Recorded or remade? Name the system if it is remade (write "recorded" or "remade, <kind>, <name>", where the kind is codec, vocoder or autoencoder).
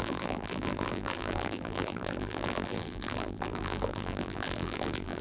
remade, vocoder, BigVGAN v2